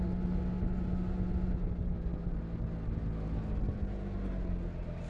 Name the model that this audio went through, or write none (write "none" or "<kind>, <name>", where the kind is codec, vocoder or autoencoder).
none